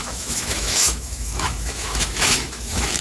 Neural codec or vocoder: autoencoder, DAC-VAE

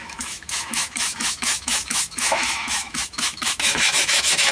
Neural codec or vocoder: autoencoder, DAC-VAE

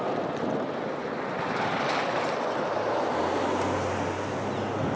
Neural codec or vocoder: none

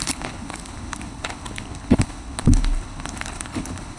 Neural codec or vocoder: codec, HILCodec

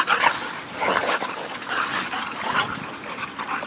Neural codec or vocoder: none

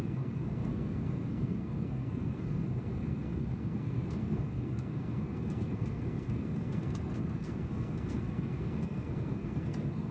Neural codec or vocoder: codec, SNAC